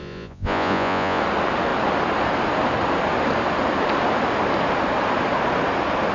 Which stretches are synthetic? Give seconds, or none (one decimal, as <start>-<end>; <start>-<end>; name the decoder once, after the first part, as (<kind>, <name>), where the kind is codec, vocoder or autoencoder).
0.0-1.2 (vocoder, Vocos)

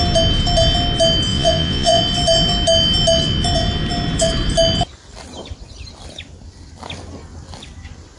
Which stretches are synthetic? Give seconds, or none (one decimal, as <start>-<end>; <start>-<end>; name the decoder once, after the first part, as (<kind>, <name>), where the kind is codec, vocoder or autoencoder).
1.3-2.0 (vocoder, Vocos)